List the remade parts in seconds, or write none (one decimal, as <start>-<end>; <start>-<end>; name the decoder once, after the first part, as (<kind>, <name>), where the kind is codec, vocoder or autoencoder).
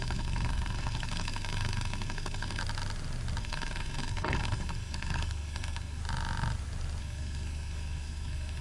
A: 0.0-2.6 (codec, SNAC); 3.4-6.0; 7.0-8.6